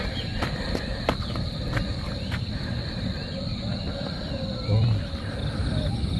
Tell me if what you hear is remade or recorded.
remade